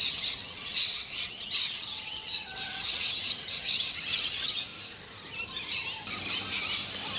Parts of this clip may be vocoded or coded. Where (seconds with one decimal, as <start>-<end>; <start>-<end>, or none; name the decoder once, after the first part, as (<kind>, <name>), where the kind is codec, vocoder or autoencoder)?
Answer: 0.0-4.7 (vocoder, WaveNeXt)